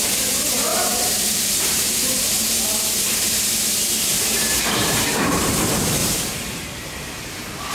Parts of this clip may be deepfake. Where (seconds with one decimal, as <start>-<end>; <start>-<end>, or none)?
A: 0.7-2.5; 4.1-5.5; 6.0-6.8